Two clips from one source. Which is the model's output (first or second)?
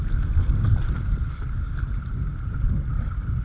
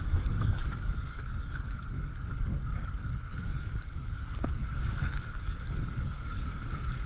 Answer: second